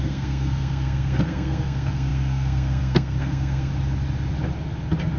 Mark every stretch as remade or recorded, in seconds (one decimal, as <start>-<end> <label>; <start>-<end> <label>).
0.0-3.7 remade; 3.7-5.2 recorded